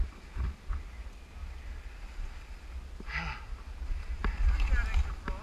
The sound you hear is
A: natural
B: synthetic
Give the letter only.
A